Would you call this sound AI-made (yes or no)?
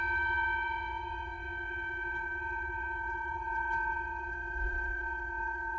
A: yes